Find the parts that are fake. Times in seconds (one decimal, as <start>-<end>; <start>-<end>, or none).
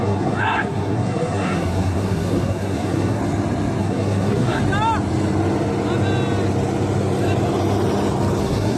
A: 0.0-3.2; 3.8-4.6; 8.4-8.8